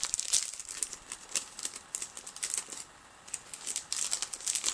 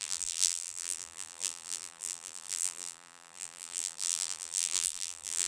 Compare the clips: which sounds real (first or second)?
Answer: first